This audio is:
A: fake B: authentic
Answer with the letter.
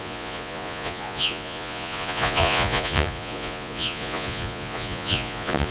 A